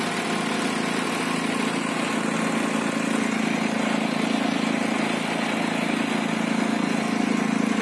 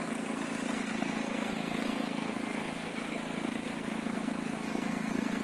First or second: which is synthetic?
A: second